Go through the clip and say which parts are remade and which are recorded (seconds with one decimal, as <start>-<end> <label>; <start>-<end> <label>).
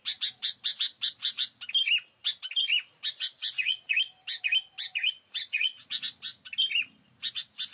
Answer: 0.0-3.1 recorded; 3.1-3.9 remade; 3.9-5.0 recorded; 5.0-5.8 remade; 5.8-7.7 recorded